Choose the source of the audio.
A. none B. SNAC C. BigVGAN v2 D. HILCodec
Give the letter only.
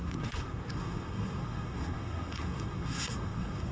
B